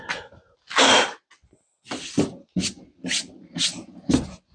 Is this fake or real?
real